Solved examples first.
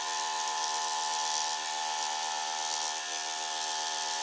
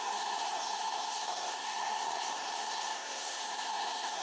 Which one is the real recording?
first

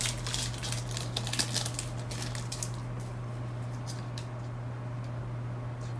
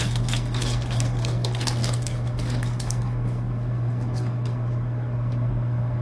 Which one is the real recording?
first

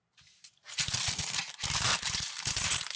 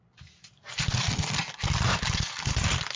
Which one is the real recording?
second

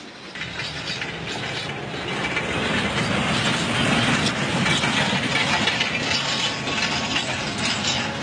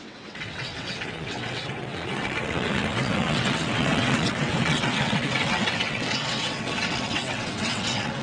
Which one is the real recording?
first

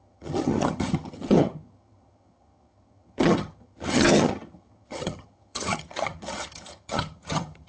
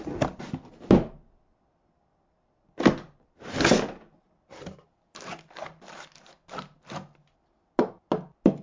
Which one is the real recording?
second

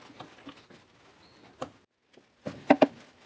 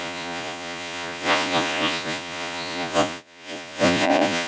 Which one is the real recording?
first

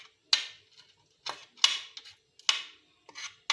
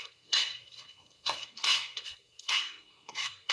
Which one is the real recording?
first